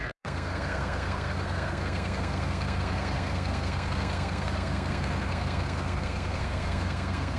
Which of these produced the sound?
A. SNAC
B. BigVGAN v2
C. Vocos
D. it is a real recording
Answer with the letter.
A